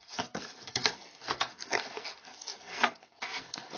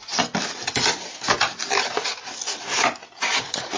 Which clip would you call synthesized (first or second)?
first